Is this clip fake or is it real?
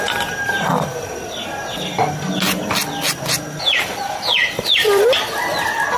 real